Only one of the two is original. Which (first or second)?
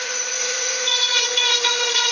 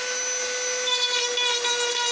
second